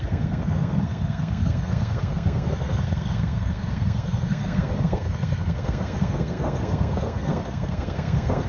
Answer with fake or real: fake